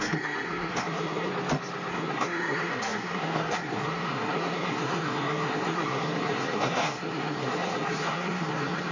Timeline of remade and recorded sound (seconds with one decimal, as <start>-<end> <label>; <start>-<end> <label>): 0.0-1.3 remade; 1.3-1.9 recorded; 1.9-8.9 remade